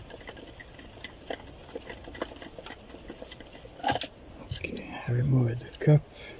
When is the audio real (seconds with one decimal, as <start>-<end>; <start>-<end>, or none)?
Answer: 0.0-6.4